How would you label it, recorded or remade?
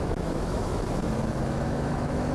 remade